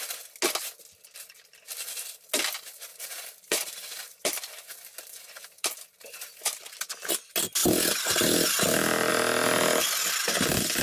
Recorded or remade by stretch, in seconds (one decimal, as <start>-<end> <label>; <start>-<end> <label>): 0.0-2.9 recorded; 2.9-7.1 remade; 7.1-7.6 recorded; 7.6-9.1 remade; 9.1-10.8 recorded